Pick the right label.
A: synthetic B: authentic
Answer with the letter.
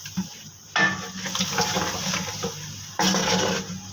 B